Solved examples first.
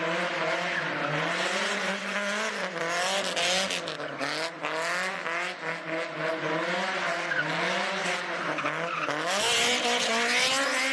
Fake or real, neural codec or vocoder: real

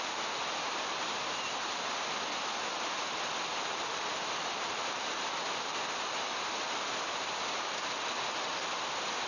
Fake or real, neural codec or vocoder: real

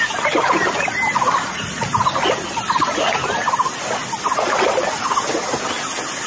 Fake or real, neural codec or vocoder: real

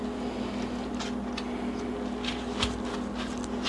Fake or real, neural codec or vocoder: real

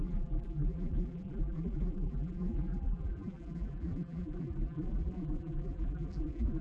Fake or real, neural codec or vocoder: fake, vocoder, BigVGAN v2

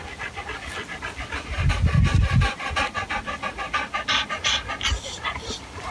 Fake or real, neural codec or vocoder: real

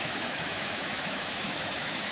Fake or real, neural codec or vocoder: fake, autoencoder, DAC-VAE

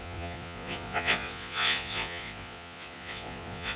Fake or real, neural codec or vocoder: fake, vocoder, Vocos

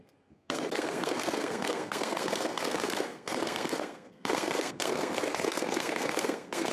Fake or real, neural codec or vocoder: fake, codec, SNAC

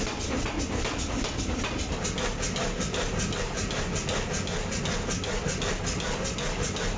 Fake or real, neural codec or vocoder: real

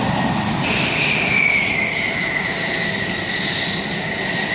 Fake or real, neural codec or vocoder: real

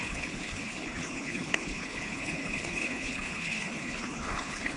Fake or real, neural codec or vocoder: fake, codec, HILCodec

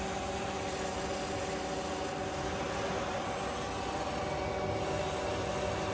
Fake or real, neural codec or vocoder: real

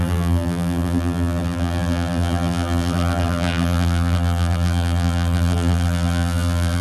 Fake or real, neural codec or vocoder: fake, vocoder, BigVGAN v2